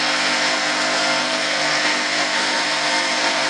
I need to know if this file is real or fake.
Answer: fake